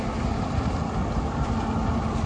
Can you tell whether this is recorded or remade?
recorded